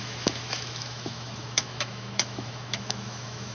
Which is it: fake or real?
fake